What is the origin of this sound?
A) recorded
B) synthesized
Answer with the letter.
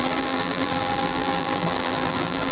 B